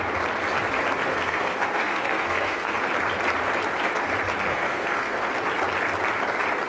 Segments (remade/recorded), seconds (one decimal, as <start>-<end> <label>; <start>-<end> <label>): 0.0-1.1 recorded; 1.1-2.8 remade; 2.8-4.5 recorded; 4.5-5.3 remade; 5.3-6.7 recorded